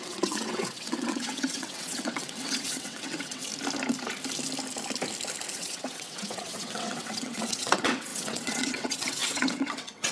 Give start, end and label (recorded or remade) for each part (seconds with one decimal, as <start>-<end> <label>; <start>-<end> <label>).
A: 0.0-3.5 remade; 3.5-5.5 recorded; 5.5-10.1 remade